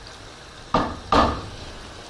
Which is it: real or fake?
real